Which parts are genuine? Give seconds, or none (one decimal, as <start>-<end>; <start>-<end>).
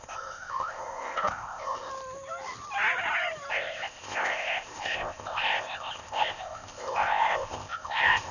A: 1.9-3.5